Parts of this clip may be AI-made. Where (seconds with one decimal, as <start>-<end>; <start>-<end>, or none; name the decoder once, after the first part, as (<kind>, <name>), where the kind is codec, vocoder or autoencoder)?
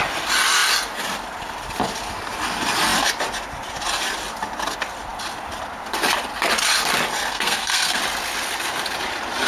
7.3-8.0 (codec, SNAC)